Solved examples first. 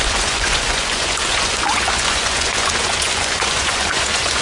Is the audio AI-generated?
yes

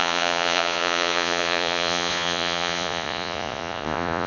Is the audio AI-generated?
yes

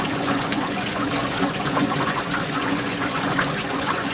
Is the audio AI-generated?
yes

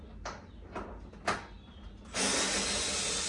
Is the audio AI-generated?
no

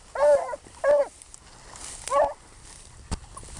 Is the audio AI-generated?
no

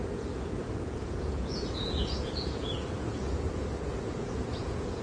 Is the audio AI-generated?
yes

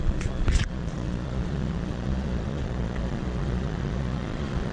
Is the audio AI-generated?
yes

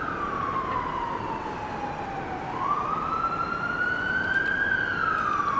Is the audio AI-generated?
no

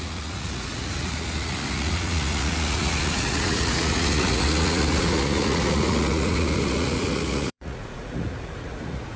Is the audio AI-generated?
yes